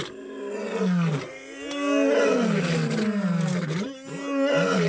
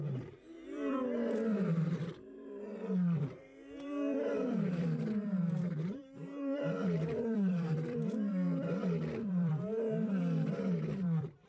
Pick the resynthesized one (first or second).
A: second